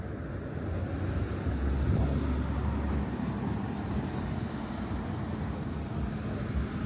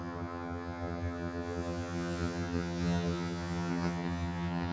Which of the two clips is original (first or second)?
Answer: first